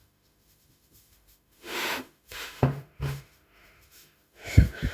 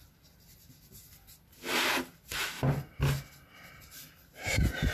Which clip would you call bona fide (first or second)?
second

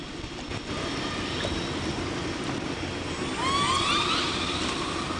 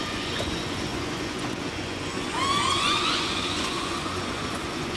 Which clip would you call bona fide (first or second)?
first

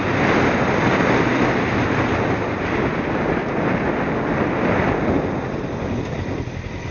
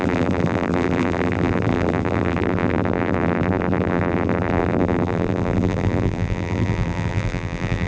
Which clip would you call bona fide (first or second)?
first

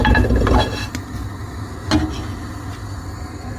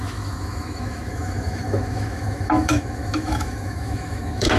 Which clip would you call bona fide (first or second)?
first